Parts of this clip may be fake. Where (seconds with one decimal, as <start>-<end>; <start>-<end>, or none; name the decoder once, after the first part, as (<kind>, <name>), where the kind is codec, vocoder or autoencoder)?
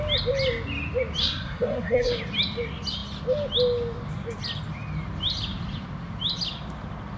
1.2-2.2 (codec, SNAC)